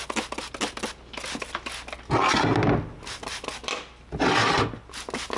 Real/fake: real